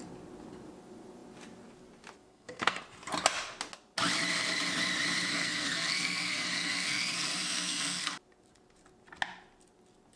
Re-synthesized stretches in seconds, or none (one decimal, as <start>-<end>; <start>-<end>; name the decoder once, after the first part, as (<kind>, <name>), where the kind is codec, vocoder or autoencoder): 2.3-2.8 (codec, SNAC); 5.3-8.1